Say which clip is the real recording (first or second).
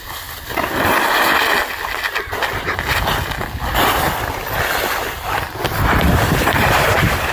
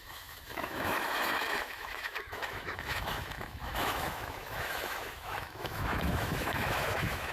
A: first